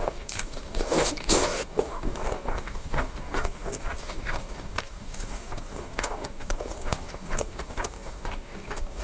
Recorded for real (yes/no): no